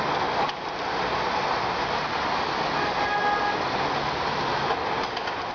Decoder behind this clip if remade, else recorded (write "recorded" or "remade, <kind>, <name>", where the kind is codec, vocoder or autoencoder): recorded